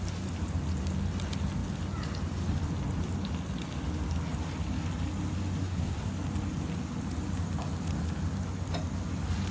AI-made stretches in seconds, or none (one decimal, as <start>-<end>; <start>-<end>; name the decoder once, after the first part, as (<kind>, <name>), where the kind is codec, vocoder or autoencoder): 5.6-6.1 (codec, SNAC)